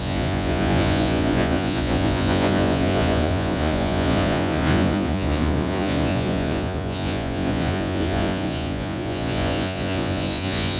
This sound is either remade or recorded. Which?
remade